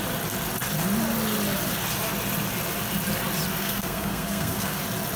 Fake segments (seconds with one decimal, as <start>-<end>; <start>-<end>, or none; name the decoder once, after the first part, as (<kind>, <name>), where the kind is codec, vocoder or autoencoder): 3.6-4.8 (codec, SNAC)